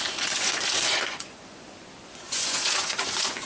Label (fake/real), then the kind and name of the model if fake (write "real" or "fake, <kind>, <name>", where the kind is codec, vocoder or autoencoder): fake, vocoder, Vocos